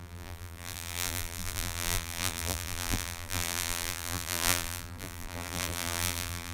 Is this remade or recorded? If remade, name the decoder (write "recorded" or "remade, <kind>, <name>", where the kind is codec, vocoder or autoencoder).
remade, vocoder, BigVGAN v2